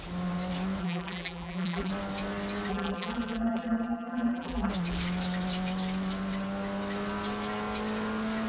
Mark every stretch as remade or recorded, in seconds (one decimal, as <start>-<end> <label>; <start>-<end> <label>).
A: 0.0-0.8 recorded; 0.8-1.9 remade; 1.9-2.7 recorded; 2.7-4.7 remade; 4.7-8.5 recorded